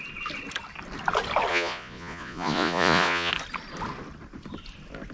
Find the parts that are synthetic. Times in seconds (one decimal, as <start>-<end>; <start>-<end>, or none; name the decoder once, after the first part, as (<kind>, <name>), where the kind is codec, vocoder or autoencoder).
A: 1.5-3.3 (vocoder, Vocos)